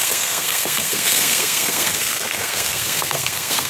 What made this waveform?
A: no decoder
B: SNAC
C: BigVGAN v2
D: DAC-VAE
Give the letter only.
B